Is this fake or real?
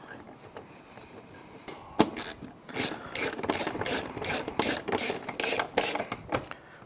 real